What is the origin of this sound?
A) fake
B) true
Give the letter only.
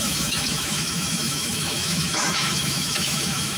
A